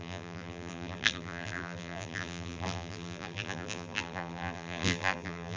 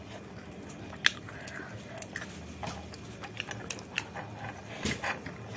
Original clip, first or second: second